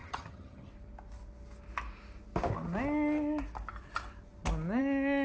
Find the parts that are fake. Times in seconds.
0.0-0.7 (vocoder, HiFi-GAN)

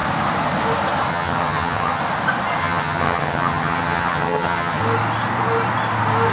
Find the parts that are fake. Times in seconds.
1.1-2.0 (vocoder, HiFi-GAN); 2.6-4.8

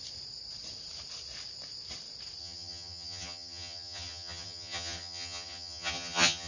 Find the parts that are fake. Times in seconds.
2.4-6.5 (vocoder, HiFi-GAN)

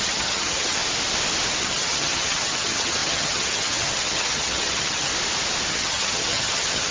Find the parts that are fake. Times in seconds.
0.0-0.8 (vocoder, HiFi-GAN); 1.6-5.1; 5.7-6.9

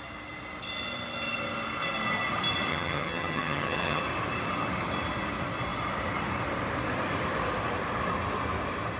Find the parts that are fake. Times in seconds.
2.7-4.0 (vocoder, HiFi-GAN)

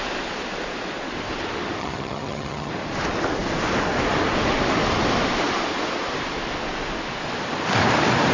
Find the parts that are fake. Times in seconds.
1.8-2.7 (vocoder, HiFi-GAN)

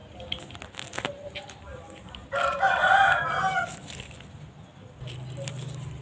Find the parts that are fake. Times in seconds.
none